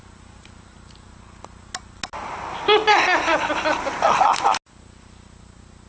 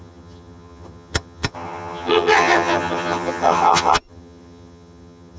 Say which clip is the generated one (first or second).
second